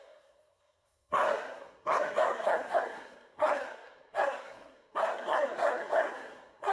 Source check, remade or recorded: remade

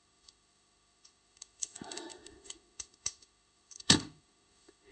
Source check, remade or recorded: remade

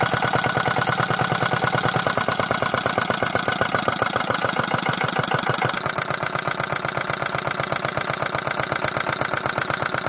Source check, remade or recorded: recorded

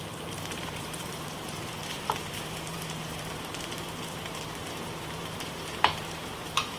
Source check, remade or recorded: remade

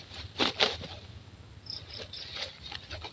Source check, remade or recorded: recorded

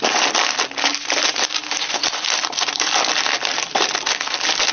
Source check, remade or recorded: recorded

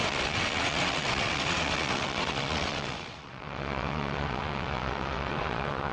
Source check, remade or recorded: remade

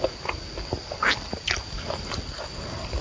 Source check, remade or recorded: recorded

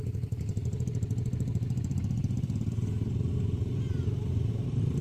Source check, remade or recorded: recorded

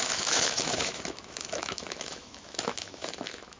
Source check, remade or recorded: remade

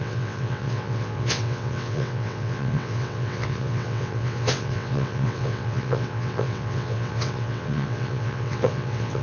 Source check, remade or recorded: remade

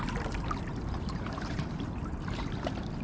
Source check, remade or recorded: remade